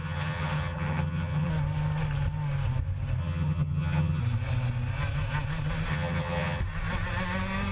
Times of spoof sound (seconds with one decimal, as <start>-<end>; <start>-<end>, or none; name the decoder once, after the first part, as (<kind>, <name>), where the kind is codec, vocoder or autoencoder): 0.0-1.5 (vocoder, HiFi-GAN); 3.2-4.2; 5.9-6.6